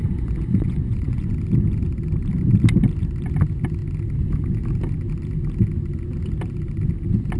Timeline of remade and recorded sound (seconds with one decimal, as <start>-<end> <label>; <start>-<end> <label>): 0.0-1.3 remade; 1.3-7.4 recorded